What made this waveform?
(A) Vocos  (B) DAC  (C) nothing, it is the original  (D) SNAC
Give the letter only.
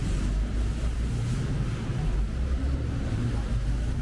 C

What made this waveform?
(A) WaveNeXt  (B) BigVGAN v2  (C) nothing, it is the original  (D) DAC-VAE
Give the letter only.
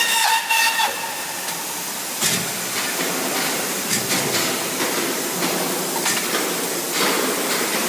C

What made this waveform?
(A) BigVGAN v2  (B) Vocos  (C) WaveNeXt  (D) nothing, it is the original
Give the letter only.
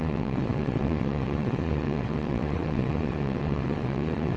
C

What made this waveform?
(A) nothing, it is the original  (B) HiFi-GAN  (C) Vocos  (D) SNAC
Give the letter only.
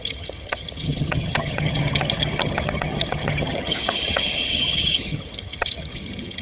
B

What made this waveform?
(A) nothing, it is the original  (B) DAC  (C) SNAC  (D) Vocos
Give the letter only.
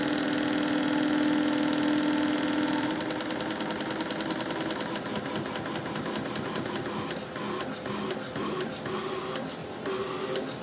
A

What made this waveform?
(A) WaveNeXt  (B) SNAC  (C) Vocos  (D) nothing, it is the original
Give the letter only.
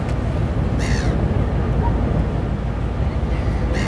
D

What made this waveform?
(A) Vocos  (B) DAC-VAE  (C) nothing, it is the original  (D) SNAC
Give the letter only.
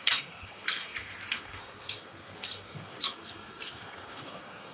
D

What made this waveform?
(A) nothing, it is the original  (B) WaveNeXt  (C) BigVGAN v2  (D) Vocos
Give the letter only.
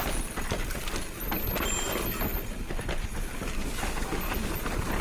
C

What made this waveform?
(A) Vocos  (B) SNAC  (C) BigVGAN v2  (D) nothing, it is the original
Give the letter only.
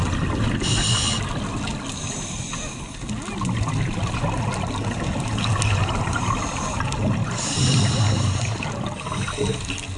D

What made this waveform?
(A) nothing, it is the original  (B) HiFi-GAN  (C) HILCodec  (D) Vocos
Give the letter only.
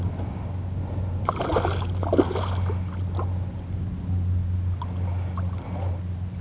A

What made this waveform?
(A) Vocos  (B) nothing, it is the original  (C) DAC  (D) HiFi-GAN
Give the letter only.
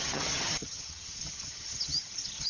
D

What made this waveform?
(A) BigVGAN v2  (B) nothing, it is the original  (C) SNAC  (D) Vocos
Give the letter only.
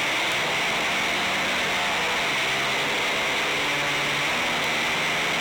B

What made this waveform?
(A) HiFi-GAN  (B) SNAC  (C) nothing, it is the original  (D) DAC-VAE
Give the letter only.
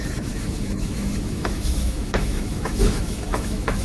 D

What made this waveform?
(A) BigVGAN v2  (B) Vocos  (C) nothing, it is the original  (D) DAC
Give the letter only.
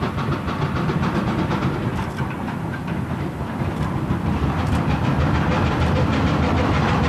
A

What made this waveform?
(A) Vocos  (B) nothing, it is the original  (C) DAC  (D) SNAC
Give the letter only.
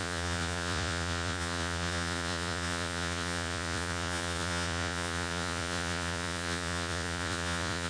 A